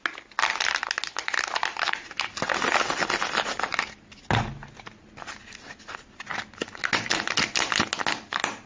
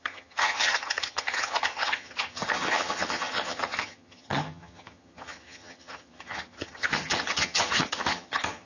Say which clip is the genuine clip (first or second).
first